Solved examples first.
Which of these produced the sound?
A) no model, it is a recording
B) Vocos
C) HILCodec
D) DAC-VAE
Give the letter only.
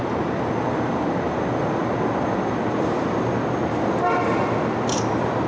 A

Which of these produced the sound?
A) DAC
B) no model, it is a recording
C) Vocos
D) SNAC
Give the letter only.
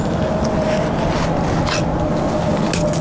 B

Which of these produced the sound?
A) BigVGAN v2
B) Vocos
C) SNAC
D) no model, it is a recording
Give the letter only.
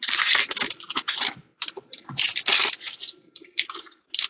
D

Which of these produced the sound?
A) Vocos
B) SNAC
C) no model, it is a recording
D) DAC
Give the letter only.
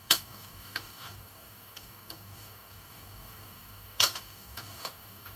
D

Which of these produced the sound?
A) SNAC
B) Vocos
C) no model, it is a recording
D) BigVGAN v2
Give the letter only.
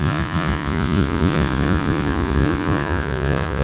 B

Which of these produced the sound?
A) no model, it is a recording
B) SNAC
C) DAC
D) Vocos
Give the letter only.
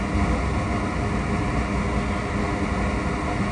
A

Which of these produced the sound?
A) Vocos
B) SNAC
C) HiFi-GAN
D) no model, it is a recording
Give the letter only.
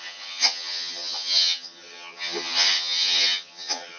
C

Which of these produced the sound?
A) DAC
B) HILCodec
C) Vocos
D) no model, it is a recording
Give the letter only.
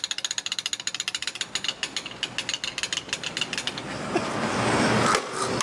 D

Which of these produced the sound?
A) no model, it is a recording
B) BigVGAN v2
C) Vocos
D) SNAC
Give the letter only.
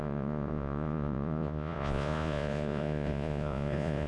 C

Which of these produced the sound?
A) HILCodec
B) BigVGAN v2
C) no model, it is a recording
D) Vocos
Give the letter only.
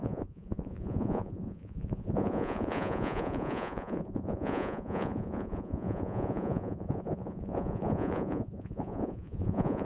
D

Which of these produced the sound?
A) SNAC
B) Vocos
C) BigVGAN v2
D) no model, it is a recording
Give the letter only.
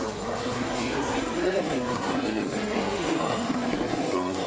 A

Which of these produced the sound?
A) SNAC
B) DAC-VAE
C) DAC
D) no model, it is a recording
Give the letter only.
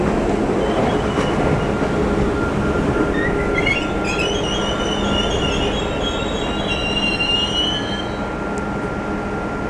D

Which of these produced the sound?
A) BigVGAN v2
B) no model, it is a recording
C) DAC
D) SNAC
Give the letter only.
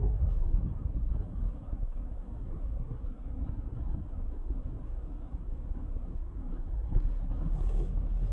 D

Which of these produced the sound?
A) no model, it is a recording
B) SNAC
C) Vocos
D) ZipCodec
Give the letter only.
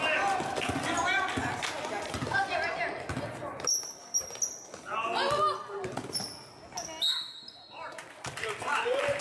A